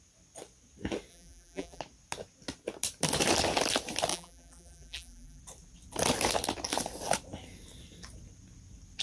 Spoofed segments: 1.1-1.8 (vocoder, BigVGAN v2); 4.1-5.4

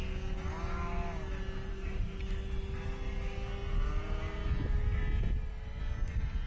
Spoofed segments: 1.7-2.2 (codec, DAC)

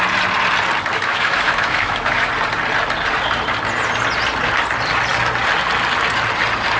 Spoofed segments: 0.9-2.3 (autoencoder, DAC-VAE)

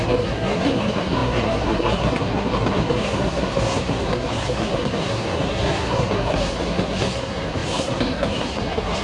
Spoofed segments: 0.0-9.0 (codec, SNAC)